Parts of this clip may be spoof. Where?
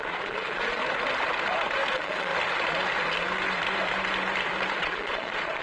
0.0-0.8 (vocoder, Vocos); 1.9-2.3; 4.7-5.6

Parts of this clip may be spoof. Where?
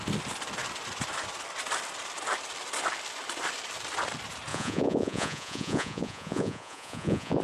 4.5-7.4 (vocoder, Vocos)